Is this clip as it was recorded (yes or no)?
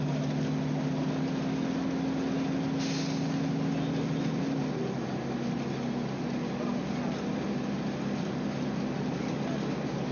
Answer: yes